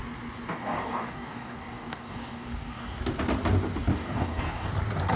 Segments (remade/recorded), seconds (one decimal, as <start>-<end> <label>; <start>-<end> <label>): 0.0-0.5 recorded; 0.5-3.0 remade; 3.0-3.9 recorded; 3.9-4.7 remade; 4.7-5.2 recorded